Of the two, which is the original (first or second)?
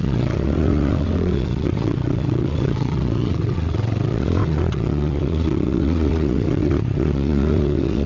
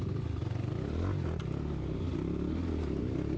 second